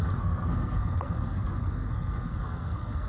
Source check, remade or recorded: remade